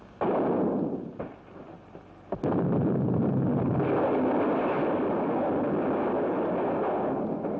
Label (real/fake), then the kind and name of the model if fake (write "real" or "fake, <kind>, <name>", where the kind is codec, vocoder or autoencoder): real